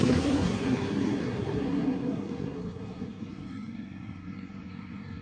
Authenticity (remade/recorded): remade